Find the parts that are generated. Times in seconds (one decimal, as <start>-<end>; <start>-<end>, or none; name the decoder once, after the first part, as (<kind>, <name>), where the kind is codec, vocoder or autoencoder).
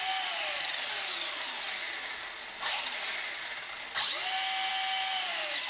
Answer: none